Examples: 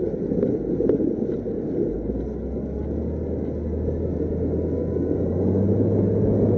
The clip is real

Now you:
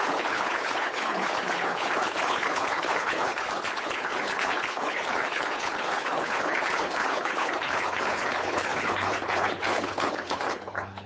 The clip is fake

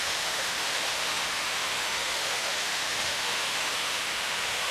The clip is fake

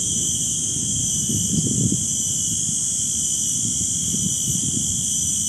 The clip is real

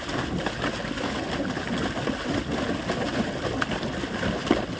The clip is real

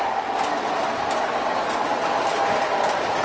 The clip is real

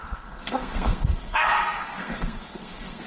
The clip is fake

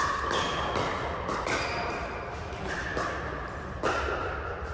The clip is real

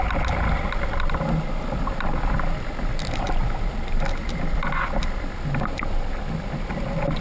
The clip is real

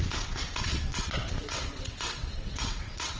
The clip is fake